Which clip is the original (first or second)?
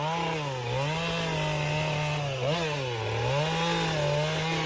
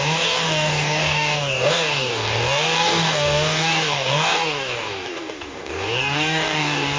first